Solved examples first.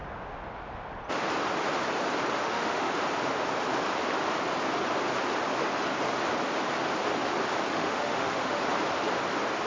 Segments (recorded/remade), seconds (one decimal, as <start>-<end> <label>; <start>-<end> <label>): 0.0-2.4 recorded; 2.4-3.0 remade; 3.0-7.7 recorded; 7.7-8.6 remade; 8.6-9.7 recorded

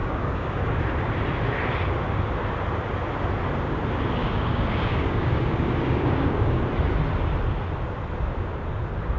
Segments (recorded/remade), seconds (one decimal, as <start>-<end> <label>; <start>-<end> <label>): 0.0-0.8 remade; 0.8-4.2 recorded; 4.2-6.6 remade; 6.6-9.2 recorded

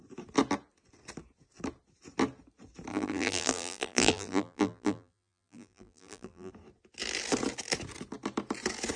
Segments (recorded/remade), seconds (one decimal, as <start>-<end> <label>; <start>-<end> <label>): 0.0-2.9 recorded; 2.9-6.5 remade; 6.5-9.0 recorded

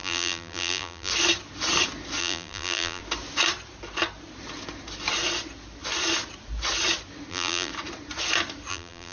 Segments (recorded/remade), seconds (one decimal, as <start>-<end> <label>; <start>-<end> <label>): 0.0-1.1 remade; 1.1-2.2 recorded; 2.2-3.0 remade; 3.0-7.3 recorded; 7.3-7.7 remade; 7.7-8.7 recorded; 8.7-9.1 remade

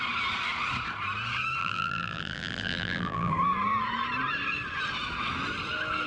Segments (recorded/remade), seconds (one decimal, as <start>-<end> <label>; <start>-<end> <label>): 0.0-1.6 recorded; 1.6-3.3 remade; 3.3-6.1 recorded

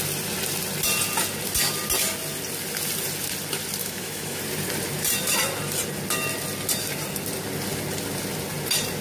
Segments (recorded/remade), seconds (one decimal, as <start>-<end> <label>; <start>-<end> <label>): 0.0-3.8 recorded; 3.8-4.4 remade; 4.4-9.0 recorded

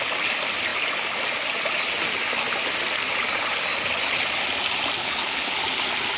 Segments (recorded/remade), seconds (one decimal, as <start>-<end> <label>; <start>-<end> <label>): 0.0-5.0 recorded; 5.0-5.6 remade; 5.6-6.2 recorded